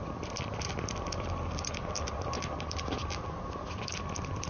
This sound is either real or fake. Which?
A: fake